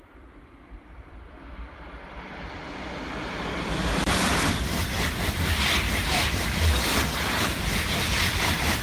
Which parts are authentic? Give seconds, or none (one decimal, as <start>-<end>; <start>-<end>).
4.7-6.3